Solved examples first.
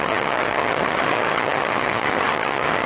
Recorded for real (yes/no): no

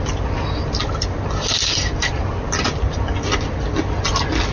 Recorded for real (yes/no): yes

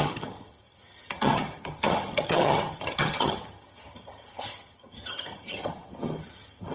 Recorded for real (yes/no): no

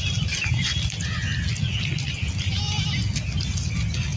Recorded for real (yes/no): yes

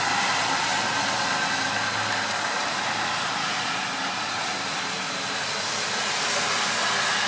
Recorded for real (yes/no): yes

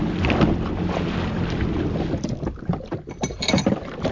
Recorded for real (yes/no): yes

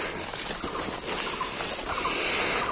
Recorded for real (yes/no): yes